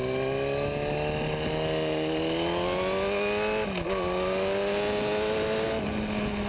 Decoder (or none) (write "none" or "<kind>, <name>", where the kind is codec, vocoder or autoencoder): none